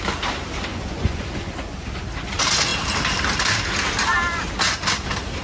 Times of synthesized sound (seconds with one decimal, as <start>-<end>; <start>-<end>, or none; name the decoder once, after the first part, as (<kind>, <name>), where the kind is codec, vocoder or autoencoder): 0.7-1.7 (vocoder, Vocos)